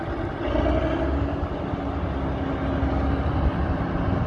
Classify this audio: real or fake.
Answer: real